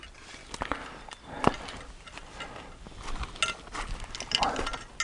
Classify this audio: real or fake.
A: real